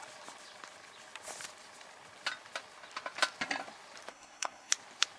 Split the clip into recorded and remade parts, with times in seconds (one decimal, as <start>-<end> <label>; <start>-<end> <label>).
0.0-4.1 recorded; 4.1-4.7 remade; 4.7-5.2 recorded